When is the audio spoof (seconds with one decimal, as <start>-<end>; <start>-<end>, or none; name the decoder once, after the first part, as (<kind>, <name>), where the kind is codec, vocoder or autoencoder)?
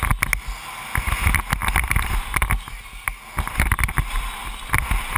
1.6-2.4 (vocoder, BigVGAN v2)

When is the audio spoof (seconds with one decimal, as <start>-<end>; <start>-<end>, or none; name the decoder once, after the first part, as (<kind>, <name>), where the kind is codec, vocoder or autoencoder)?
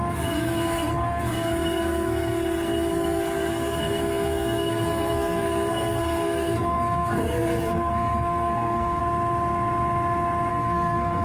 0.0-9.0 (codec, SNAC); 10.5-11.2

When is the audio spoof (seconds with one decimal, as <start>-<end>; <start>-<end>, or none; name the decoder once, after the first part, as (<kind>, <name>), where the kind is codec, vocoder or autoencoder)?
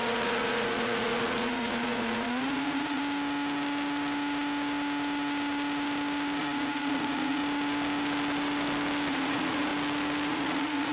0.0-3.0 (vocoder, Vocos); 6.4-7.4; 9.1-9.7; 10.3-10.9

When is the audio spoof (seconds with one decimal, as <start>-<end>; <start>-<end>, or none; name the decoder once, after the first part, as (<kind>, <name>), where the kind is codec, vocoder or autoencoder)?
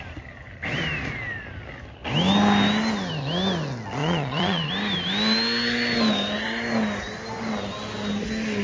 4.0-4.7 (vocoder, Vocos)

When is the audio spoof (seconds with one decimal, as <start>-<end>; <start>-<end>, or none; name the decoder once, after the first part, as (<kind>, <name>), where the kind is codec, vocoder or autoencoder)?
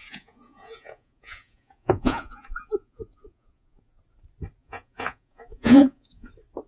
0.0-4.0 (vocoder, Vocos); 4.6-6.3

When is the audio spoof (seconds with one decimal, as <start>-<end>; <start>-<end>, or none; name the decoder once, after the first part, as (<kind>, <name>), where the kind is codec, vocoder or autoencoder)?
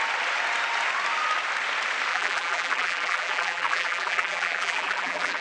2.1-5.4 (vocoder, BigVGAN v2)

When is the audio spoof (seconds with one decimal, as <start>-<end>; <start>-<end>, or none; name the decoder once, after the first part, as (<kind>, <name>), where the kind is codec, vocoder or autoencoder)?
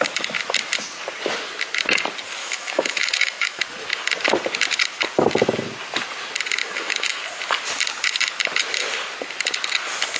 2.4-3.6 (autoencoder, DAC-VAE); 6.6-7.2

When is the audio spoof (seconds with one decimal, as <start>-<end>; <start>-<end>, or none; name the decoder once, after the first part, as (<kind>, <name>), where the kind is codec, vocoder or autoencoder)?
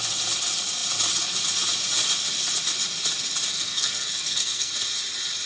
3.5-4.7 (codec, SNAC)